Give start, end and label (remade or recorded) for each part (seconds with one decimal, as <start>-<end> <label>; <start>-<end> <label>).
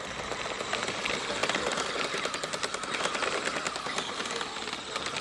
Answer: 0.0-5.2 recorded